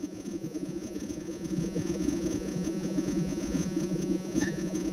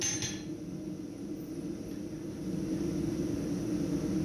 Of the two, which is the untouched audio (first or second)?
second